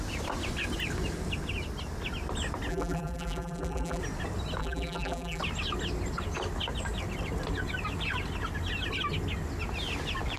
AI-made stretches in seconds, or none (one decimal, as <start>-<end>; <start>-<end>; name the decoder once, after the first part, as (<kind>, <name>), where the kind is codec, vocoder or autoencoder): 2.7-4.0 (vocoder, BigVGAN v2); 4.6-5.4